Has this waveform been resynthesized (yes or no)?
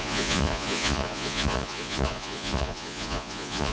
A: yes